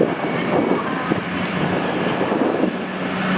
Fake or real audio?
real